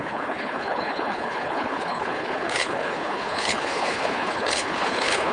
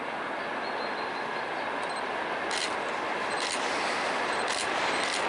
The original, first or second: second